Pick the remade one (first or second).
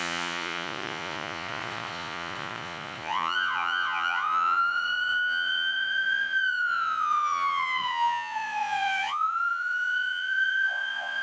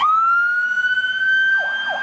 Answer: first